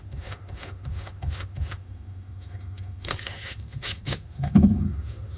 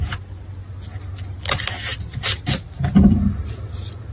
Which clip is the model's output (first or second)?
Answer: first